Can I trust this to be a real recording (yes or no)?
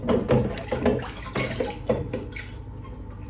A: yes